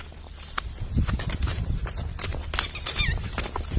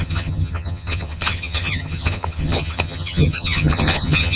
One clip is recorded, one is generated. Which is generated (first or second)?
second